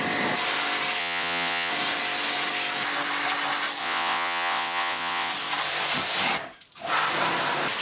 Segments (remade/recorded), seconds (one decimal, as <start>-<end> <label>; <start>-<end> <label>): 0.0-1.0 recorded; 1.0-1.7 remade; 1.7-3.8 recorded; 3.8-5.3 remade; 5.3-7.8 recorded